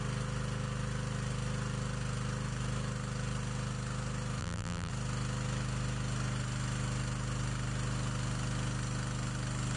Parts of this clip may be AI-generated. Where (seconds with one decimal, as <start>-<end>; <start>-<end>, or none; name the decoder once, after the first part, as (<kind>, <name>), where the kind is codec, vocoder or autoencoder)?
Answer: 4.4-4.9 (vocoder, BigVGAN v2)